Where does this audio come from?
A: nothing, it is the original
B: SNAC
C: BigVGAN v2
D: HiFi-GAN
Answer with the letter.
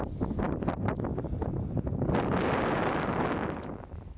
A